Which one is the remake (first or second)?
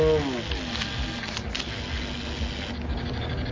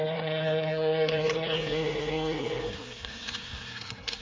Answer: second